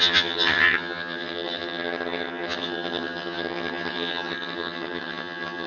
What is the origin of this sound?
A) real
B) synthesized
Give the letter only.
B